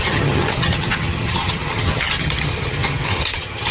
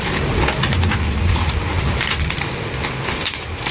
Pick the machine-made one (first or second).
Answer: first